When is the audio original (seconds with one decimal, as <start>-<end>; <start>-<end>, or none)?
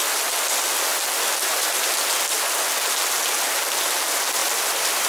0.0-4.4